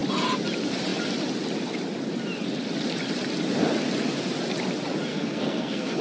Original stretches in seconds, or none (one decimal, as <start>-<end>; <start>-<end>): 0.0-5.1